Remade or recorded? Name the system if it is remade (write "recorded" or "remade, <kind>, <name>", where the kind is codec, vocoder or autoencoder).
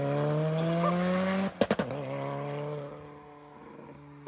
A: recorded